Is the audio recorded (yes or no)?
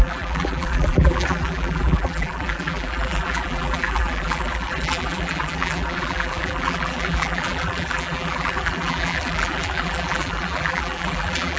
no